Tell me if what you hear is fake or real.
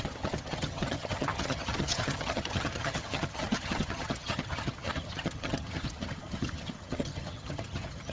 fake